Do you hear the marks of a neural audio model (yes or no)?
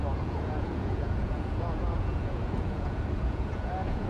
yes